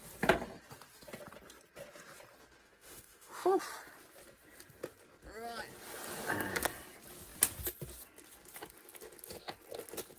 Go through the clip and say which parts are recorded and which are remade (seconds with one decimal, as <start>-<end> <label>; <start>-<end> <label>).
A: 0.0-2.6 recorded; 2.6-3.6 remade; 3.6-10.2 recorded